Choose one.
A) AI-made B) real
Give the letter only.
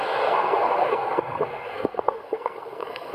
A